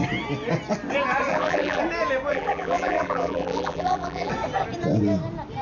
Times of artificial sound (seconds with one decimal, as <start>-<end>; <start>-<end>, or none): 1.3-1.8; 2.3-4.3